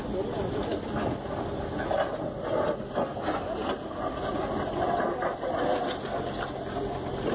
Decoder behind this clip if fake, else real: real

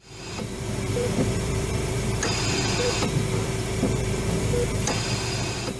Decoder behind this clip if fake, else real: fake, vocoder, BigVGAN v2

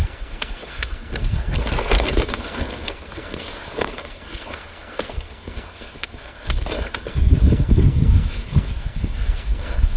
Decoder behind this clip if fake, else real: fake, codec, SNAC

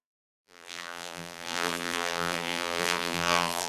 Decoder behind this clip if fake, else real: fake, vocoder, BigVGAN v2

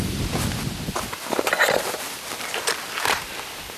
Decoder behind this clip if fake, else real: real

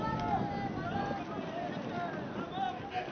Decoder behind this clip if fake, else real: real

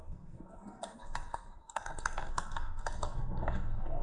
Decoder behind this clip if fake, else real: fake, codec, SNAC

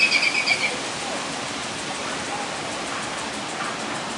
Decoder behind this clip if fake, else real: real